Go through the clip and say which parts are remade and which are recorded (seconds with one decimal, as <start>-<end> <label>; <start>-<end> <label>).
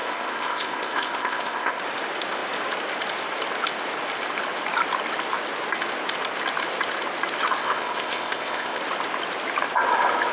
0.0-1.8 remade; 1.8-7.6 recorded; 7.6-8.8 remade; 8.8-10.3 recorded